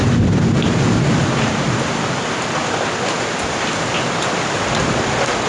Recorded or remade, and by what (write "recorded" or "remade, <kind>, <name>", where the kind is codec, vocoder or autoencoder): recorded